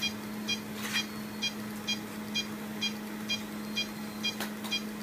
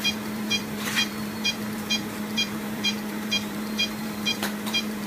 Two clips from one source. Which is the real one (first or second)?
first